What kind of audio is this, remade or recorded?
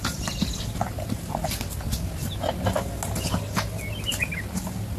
recorded